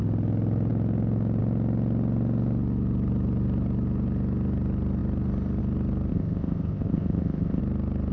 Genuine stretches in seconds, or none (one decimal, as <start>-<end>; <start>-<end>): 0.0-6.1; 7.6-8.1

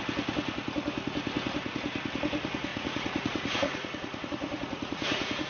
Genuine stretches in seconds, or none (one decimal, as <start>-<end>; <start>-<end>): 0.0-2.7

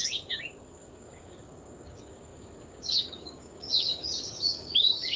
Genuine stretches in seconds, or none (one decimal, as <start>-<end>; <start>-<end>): none

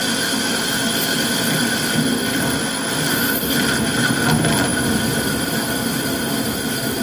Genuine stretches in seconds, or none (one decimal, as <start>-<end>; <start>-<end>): 0.0-4.7; 6.0-7.0

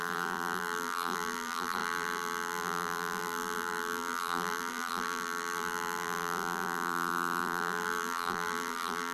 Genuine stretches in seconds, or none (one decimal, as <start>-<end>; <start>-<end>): none